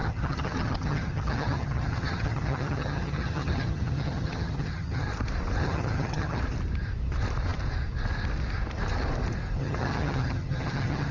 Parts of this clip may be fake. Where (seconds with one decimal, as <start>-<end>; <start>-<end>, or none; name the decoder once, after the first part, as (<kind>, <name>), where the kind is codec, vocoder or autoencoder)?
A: 0.0-5.1 (vocoder, HiFi-GAN); 5.6-6.4; 9.6-11.1